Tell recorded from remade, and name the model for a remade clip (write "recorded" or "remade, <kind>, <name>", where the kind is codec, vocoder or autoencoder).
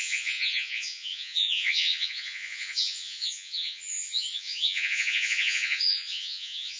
remade, vocoder, Vocos